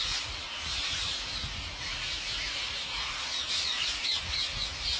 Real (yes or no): no